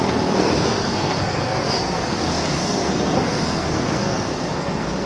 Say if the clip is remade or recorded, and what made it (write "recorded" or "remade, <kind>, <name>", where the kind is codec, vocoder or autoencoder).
remade, codec, SNAC